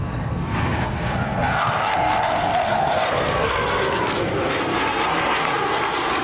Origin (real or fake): fake